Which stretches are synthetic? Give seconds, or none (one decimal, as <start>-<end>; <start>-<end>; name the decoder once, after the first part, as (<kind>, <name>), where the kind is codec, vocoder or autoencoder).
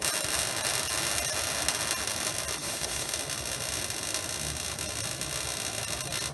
2.6-3.1 (autoencoder, DAC-VAE)